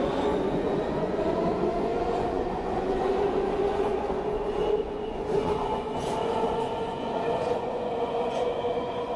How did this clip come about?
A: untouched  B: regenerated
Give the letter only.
B